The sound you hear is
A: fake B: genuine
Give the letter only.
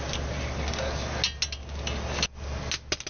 B